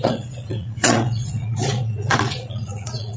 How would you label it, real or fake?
fake